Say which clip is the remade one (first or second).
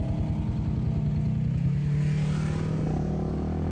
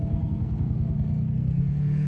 second